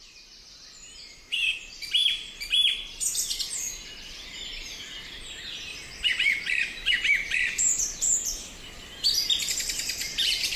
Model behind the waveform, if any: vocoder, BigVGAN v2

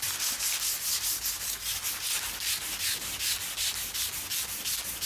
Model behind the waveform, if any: none